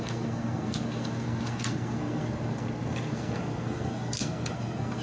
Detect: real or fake fake